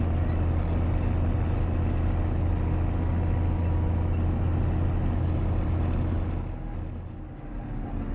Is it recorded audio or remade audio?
recorded